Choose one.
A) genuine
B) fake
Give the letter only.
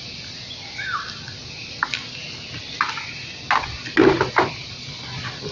A